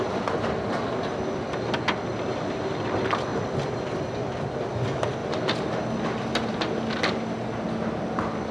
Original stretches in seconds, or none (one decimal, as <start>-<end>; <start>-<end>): 0.0-8.5